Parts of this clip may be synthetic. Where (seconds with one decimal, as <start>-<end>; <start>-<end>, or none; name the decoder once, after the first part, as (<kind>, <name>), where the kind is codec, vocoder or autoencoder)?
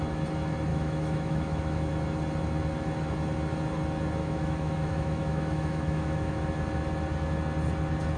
0.7-1.9 (autoencoder, DAC-VAE); 4.2-6.5